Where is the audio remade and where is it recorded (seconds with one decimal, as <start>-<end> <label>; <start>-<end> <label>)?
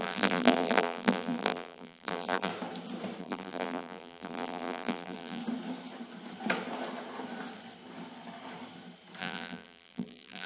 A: 0.0-2.5 remade; 2.5-3.2 recorded; 3.2-5.4 remade; 5.4-9.2 recorded; 9.2-10.5 remade